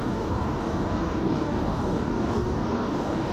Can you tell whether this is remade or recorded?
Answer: remade